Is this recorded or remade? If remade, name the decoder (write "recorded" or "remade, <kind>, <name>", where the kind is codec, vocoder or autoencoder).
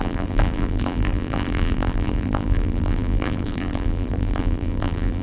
remade, vocoder, BigVGAN v2